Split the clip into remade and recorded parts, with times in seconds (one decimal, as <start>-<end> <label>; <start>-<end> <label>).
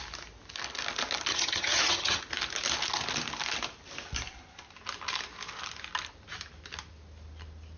0.0-1.3 recorded; 1.3-2.2 remade; 2.2-7.8 recorded